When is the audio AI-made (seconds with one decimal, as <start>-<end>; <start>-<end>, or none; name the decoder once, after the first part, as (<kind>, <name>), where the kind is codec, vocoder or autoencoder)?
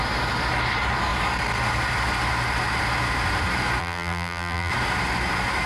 3.8-4.7 (vocoder, BigVGAN v2)